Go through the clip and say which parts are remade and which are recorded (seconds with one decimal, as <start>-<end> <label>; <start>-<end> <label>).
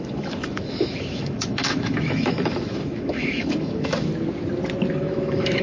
0.0-4.1 remade; 4.1-4.9 recorded; 4.9-5.6 remade